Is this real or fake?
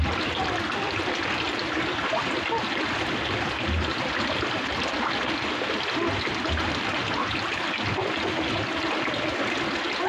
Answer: real